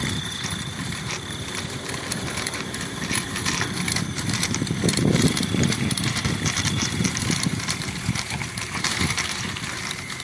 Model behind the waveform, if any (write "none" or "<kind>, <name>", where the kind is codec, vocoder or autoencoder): vocoder, BigVGAN v2